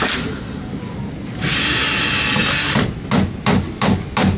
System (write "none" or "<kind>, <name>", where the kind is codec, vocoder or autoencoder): none